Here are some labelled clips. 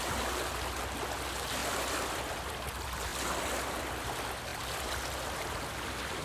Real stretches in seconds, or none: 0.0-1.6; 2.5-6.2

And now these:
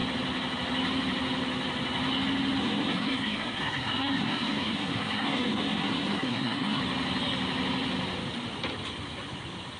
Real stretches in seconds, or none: 0.0-2.6; 6.8-9.8

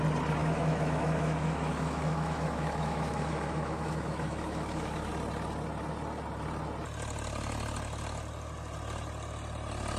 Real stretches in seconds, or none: 0.0-0.4; 5.1-10.0

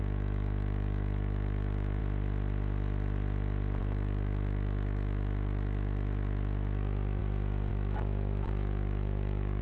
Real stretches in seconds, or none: 2.0-3.8; 7.2-7.7

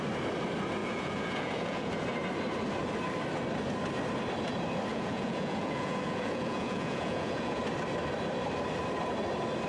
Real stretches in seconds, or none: 0.0-0.8; 1.9-4.9; 7.6-9.7